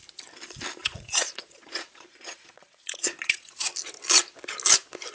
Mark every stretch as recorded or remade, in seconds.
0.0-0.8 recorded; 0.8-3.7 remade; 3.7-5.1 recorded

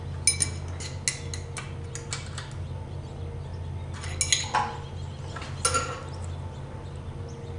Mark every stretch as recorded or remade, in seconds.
0.0-7.6 recorded

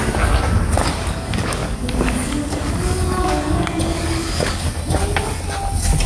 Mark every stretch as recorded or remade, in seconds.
0.0-1.0 recorded; 1.0-4.7 remade; 4.7-6.1 recorded

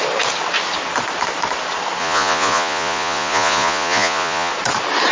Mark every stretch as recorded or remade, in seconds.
0.0-2.0 recorded; 2.0-4.5 remade; 4.5-5.1 recorded